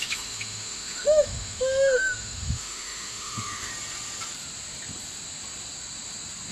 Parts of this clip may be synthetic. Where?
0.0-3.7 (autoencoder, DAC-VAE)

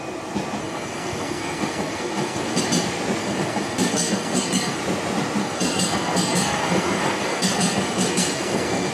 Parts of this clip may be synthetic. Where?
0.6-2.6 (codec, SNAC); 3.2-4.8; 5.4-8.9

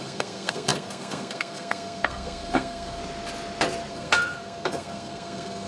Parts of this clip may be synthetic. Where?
0.0-3.0 (codec, SNAC); 3.9-5.7